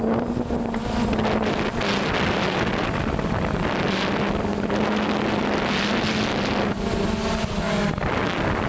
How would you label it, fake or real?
real